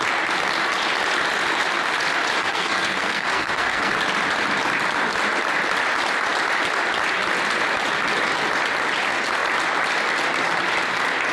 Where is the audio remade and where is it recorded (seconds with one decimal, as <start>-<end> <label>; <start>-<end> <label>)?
0.0-2.4 recorded; 2.4-3.9 remade; 3.9-11.3 recorded

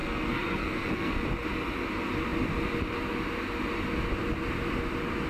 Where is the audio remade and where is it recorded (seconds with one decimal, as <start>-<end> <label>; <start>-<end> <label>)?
0.0-1.1 remade; 1.1-5.3 recorded